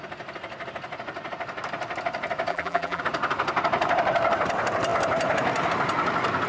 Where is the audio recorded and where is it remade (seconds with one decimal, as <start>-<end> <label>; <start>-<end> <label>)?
0.0-2.5 recorded; 2.5-3.0 remade; 3.0-6.5 recorded